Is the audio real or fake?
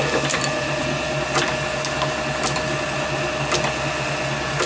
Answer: real